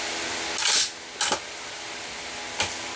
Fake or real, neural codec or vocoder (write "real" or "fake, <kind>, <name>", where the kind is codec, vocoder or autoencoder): real